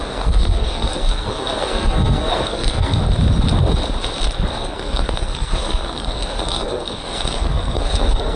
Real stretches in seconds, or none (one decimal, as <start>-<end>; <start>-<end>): 3.0-4.5